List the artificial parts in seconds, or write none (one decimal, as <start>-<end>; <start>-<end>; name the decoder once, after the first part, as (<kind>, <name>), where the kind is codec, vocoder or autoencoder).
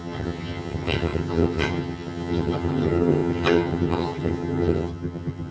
0.0-5.5 (vocoder, HiFi-GAN)